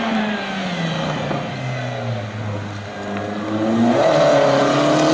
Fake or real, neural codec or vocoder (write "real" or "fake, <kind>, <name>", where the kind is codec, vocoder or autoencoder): real